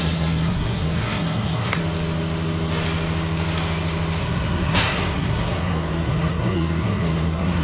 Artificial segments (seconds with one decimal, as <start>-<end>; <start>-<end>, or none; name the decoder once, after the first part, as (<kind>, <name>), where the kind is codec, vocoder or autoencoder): 0.0-1.8 (codec, SNAC); 4.2-7.6